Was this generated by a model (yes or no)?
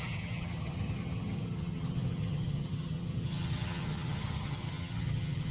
yes